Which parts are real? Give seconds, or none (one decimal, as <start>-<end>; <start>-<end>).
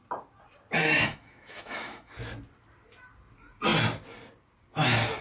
0.0-0.8; 2.1-5.2